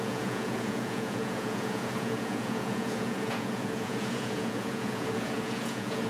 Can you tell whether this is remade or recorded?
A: remade